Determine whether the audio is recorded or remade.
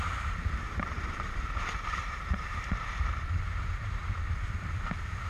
remade